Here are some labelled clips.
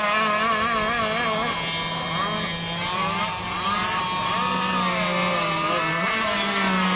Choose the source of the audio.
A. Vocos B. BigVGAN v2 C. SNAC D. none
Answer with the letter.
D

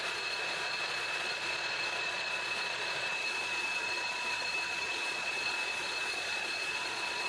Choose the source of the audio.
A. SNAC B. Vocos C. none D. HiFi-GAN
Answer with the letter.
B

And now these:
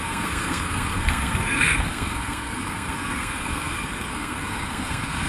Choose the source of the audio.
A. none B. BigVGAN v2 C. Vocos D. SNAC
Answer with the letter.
D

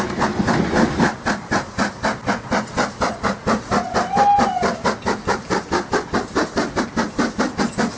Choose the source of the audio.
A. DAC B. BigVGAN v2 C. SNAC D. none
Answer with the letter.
D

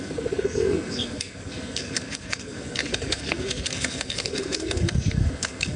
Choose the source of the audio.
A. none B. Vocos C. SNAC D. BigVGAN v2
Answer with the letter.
C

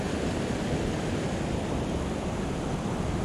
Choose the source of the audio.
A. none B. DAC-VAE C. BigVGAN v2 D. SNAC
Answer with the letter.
A